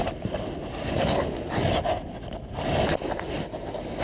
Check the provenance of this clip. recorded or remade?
recorded